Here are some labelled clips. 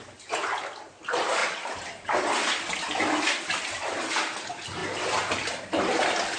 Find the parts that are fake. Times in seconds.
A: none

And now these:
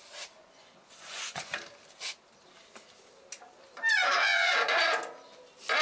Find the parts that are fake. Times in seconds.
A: 0.4-1.6 (vocoder, Vocos); 3.9-4.8

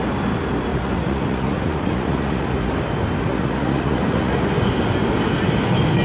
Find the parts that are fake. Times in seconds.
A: 0.7-2.7 (vocoder, Vocos); 3.3-4.4

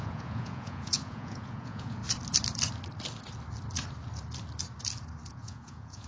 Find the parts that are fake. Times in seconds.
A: 0.0-2.0 (vocoder, Vocos); 5.3-6.1

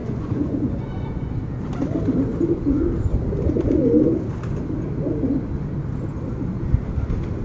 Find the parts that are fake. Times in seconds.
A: 0.0-1.3 (vocoder, Vocos)

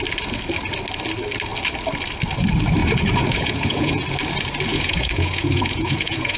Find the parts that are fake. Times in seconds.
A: 2.8-4.0 (vocoder, Vocos); 4.7-6.4

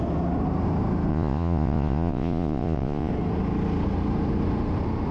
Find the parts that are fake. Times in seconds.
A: 1.1-3.1 (vocoder, Vocos)

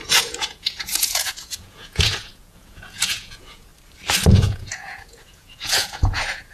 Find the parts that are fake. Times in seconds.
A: 0.0-3.7 (vocoder, Vocos); 4.3-6.5